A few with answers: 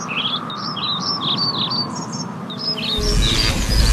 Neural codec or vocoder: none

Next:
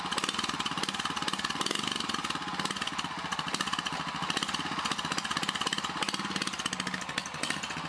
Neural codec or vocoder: none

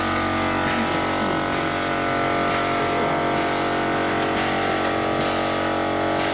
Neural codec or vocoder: none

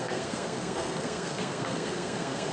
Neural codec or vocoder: codec, SNAC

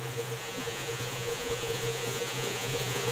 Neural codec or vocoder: vocoder, Vocos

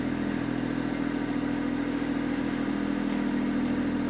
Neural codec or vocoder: none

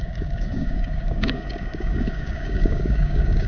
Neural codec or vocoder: codec, DAC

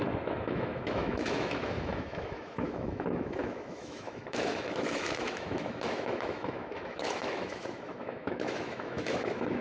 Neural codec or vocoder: autoencoder, DAC-VAE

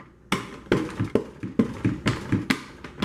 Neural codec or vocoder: none